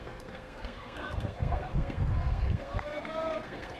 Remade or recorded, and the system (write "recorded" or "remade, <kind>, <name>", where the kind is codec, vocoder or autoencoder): remade, codec, SNAC